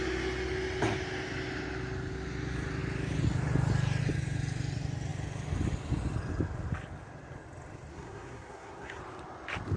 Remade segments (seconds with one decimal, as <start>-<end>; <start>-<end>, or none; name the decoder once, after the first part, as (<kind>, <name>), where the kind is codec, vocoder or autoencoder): 7.9-9.0 (codec, SNAC)